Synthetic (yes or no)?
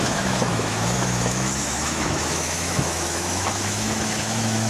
yes